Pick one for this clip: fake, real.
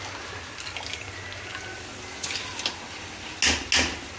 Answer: real